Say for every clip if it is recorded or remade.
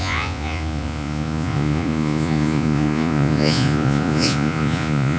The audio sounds remade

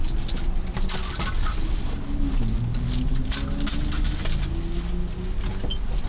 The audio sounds recorded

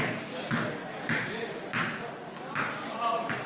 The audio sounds recorded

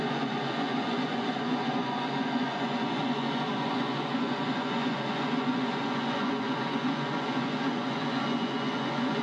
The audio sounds remade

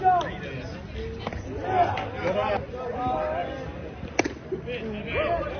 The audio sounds recorded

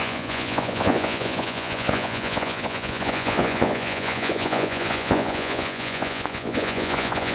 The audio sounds remade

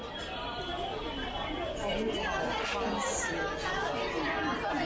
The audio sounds recorded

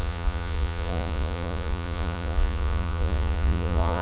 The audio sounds remade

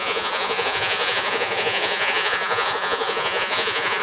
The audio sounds remade